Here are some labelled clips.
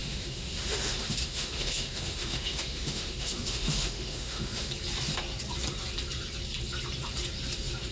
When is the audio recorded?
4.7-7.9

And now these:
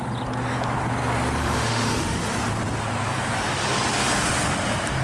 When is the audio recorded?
0.0-1.4; 2.3-5.0

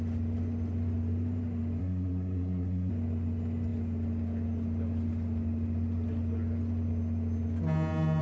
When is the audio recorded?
0.0-1.8; 2.9-8.2

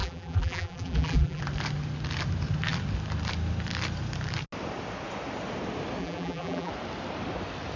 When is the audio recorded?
1.4-6.0; 6.7-7.8

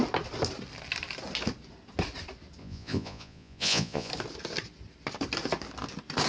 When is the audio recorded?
0.0-2.6; 4.1-6.3